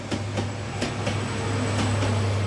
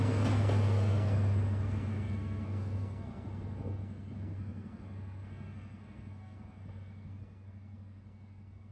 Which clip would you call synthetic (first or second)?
second